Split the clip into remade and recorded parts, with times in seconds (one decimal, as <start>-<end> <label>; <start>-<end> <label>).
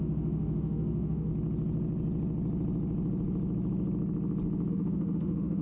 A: 0.0-1.3 remade; 1.3-4.7 recorded; 4.7-5.6 remade